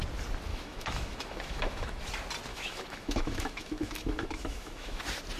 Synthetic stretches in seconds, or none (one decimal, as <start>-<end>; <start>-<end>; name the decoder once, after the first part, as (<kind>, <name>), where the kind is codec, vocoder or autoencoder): 0.5-2.0 (autoencoder, DAC-VAE); 2.5-5.0

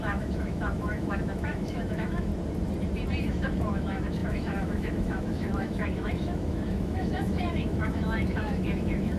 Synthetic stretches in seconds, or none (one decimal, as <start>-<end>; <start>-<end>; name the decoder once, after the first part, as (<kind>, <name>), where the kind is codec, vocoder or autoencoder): 0.0-2.3 (autoencoder, DAC-VAE); 3.2-9.2